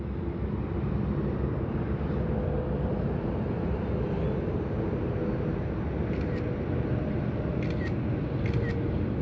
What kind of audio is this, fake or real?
real